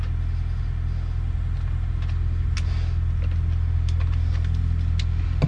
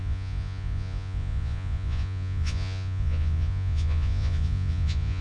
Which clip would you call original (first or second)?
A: first